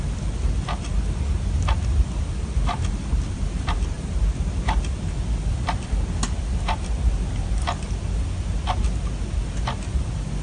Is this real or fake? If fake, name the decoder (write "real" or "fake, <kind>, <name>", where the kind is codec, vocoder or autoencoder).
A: real